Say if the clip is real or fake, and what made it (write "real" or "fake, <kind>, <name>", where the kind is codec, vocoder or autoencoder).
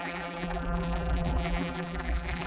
fake, vocoder, BigVGAN v2